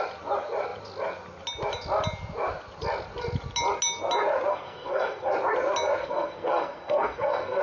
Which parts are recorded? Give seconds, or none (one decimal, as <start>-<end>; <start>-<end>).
0.0-4.5; 5.3-6.0